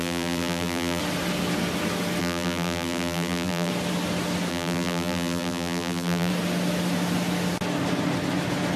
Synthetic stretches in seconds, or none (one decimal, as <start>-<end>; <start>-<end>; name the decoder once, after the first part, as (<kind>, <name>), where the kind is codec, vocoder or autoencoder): 0.0-1.0 (vocoder, BigVGAN v2); 2.2-3.7; 4.5-6.3